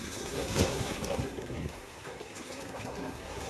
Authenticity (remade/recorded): remade